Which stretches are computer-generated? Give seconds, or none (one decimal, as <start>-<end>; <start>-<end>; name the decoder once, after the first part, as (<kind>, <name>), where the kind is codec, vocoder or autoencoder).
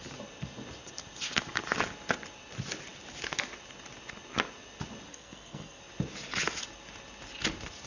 5.1-5.8 (codec, SNAC)